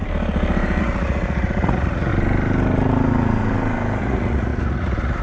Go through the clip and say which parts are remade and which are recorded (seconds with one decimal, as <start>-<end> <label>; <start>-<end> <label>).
0.0-0.8 recorded; 0.8-2.1 remade; 2.1-4.0 recorded; 4.0-5.2 remade